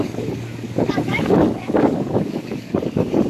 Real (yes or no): no